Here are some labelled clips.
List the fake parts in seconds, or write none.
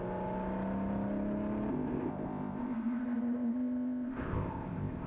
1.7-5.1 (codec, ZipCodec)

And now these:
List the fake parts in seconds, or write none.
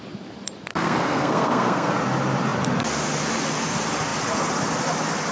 0.7-1.9 (codec, SNAC)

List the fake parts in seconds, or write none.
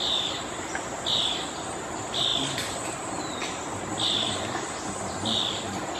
none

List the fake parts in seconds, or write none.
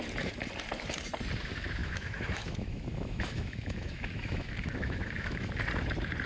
1.8-5.5 (autoencoder, DAC-VAE)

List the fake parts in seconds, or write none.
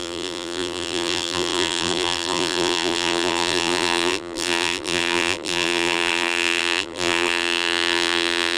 0.0-8.6 (vocoder, BigVGAN v2)